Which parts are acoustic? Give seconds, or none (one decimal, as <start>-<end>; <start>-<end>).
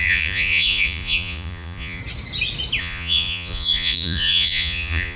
2.0-2.8